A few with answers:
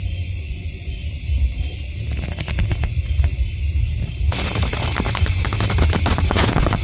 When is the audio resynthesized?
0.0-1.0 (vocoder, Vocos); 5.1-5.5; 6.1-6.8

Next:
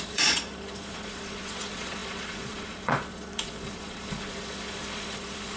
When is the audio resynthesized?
0.0-5.6 (vocoder, Vocos)

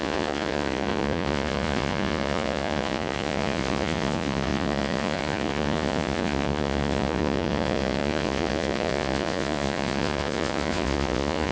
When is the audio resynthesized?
0.0-11.5 (vocoder, Vocos)